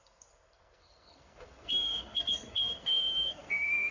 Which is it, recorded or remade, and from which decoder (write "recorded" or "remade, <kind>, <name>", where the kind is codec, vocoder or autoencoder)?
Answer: remade, codec, SNAC